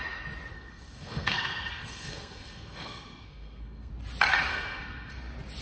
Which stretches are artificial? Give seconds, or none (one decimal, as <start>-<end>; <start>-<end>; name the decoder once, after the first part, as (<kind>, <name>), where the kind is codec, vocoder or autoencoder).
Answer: 0.5-3.9 (codec, SNAC); 4.5-5.1